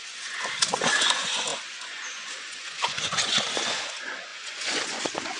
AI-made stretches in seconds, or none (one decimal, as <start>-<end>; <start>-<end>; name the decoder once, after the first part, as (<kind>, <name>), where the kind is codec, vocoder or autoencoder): 0.0-5.4 (vocoder, Vocos)